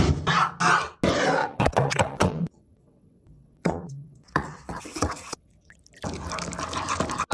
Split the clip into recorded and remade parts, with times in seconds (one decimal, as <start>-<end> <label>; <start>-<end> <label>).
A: 0.0-1.4 recorded; 1.4-5.8 remade; 5.8-7.3 recorded